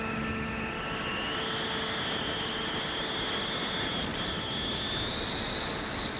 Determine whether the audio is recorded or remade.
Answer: recorded